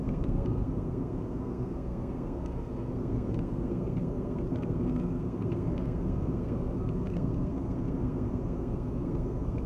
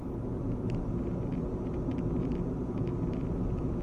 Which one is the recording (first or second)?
second